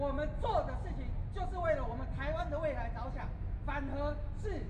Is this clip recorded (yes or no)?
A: yes